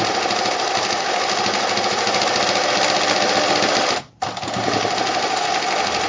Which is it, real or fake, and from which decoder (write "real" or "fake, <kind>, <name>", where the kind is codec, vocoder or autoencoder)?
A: real